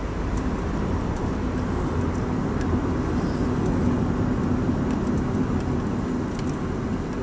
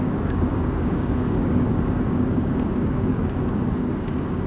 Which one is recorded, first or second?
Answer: first